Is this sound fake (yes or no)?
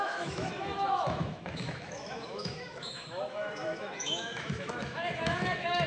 yes